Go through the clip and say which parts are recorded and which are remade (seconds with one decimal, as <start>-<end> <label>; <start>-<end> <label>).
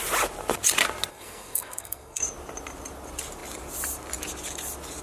0.0-1.1 recorded; 1.1-2.2 remade; 2.2-5.0 recorded